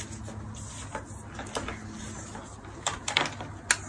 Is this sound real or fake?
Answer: real